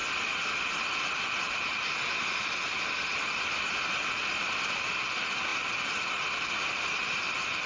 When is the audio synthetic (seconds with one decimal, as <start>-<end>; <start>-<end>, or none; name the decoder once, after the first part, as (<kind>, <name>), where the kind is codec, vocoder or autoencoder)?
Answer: 0.0-2.7 (vocoder, BigVGAN v2); 4.2-4.9; 5.5-7.3